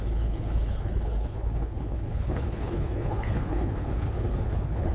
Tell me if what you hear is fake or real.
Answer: fake